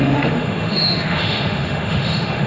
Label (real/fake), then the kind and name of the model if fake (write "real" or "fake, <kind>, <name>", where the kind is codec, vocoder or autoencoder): fake, autoencoder, DAC-VAE